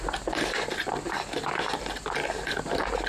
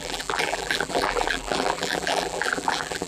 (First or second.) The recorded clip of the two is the first